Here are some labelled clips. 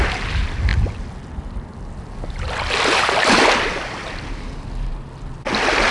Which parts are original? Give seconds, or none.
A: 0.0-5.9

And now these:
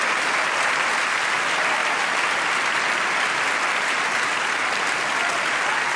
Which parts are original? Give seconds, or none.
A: 0.0-6.0

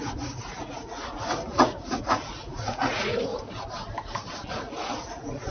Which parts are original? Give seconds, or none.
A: 3.3-4.5

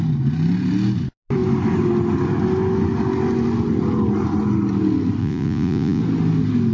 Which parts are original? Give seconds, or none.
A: 0.0-5.2; 6.0-6.7

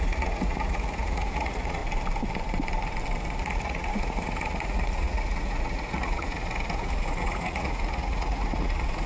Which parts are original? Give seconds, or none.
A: 1.8-3.4

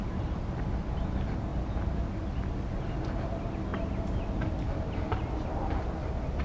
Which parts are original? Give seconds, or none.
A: 0.0-6.4

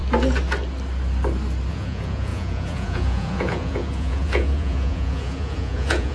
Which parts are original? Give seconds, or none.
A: 0.0-1.7

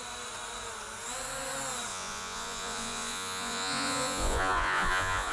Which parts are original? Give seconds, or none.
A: 0.0-1.9